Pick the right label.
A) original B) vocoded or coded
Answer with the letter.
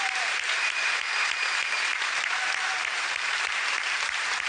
B